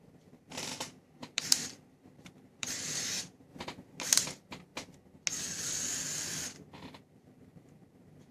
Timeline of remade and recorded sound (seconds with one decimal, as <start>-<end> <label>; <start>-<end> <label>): 0.0-3.5 remade; 3.5-4.0 recorded; 4.0-4.7 remade; 4.7-7.0 recorded; 7.0-8.3 remade